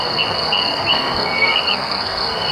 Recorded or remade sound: remade